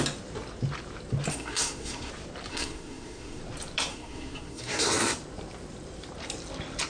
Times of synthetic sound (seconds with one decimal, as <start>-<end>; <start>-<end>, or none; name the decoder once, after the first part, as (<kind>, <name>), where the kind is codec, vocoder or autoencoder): 1.3-2.1 (codec, SNAC); 2.5-3.4; 3.9-4.9